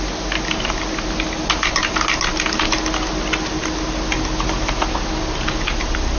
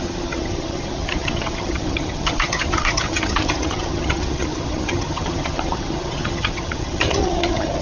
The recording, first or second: first